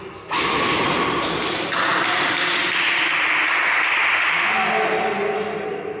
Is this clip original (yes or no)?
yes